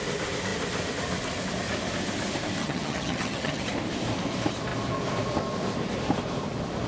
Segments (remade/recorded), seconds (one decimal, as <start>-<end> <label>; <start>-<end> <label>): 0.0-2.6 recorded; 2.6-3.6 remade; 3.6-6.9 recorded